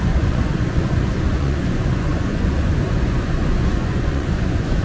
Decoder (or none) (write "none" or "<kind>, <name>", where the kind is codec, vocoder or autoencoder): vocoder, Vocos